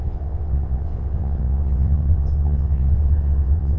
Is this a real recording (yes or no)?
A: no